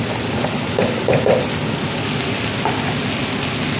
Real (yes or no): yes